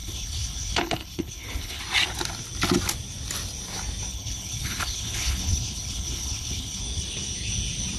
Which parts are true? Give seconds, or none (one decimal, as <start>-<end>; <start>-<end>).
1.8-4.1; 6.8-8.0